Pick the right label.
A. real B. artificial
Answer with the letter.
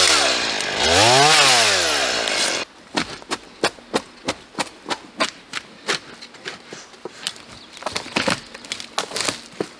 A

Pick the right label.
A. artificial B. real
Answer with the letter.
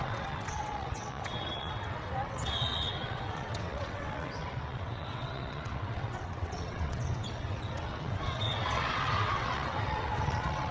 A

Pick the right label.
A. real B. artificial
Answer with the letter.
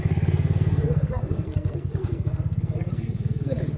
B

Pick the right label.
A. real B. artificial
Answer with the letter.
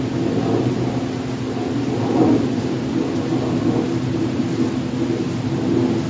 A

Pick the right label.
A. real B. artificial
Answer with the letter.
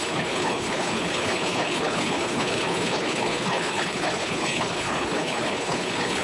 B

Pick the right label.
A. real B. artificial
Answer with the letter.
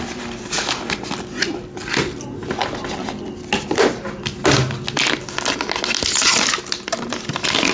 A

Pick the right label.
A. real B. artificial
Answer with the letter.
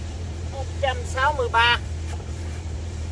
B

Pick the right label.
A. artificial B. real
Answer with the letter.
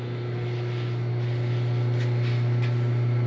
B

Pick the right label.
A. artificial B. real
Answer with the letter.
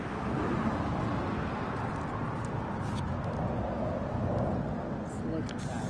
B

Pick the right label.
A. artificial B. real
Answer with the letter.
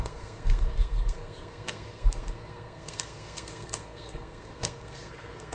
A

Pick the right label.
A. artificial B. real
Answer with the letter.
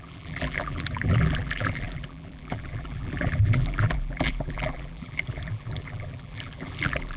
A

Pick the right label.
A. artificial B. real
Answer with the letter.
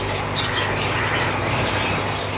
B